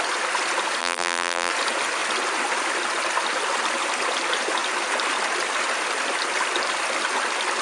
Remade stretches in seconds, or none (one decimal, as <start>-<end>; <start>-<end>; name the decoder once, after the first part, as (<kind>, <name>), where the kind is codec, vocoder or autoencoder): 0.8-1.5 (vocoder, BigVGAN v2)

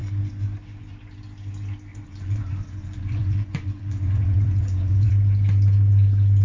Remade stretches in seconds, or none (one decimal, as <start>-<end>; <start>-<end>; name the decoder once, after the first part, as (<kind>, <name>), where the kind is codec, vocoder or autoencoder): 1.9-5.1 (vocoder, Vocos)